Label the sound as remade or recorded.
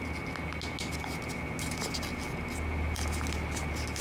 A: recorded